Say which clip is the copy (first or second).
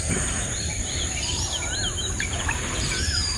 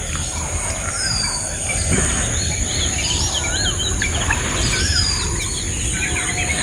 first